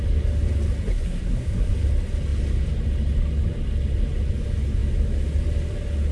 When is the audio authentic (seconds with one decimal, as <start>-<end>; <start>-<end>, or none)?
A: 0.0-0.9; 1.7-6.1

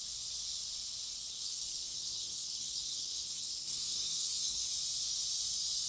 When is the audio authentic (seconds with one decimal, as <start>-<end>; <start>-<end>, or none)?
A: 0.0-1.3; 4.7-5.9